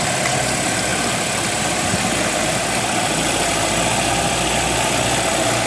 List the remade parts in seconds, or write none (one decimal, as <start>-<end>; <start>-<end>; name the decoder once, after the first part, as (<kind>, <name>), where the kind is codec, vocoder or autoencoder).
none